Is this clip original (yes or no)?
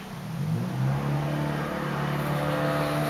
yes